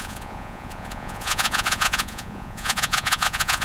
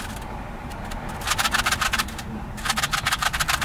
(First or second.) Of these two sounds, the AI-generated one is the first